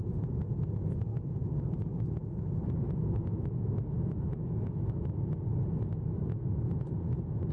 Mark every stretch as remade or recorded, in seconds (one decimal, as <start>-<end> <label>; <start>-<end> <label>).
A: 0.0-1.1 recorded; 1.1-1.6 remade; 1.6-2.2 recorded; 2.2-5.3 remade; 5.3-5.9 recorded; 5.9-6.8 remade; 6.8-7.5 recorded